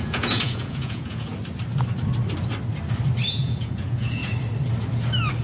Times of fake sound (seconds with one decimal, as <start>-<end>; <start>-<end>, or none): 0.0-1.3; 3.3-4.2